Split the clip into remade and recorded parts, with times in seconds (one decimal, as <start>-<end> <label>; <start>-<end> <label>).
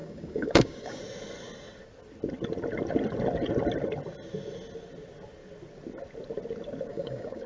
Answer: 0.0-1.0 remade; 1.0-6.9 recorded; 6.9-7.5 remade